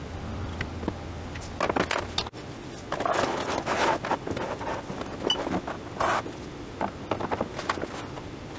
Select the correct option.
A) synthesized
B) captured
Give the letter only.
B